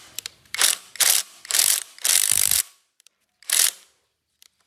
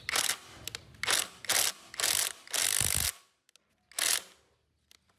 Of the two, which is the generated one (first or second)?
first